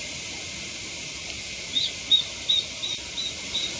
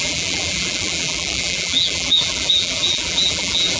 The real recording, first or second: first